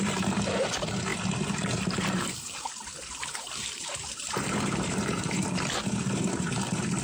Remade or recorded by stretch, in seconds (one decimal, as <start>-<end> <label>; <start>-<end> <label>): 0.0-7.0 remade